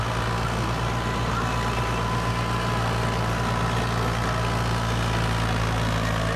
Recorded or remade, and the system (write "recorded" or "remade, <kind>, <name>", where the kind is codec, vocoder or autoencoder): recorded